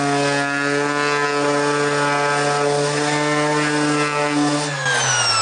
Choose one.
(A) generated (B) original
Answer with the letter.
B